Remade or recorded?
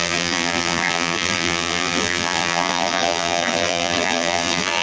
remade